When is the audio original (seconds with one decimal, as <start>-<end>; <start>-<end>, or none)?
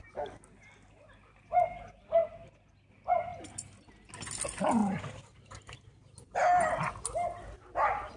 0.0-8.2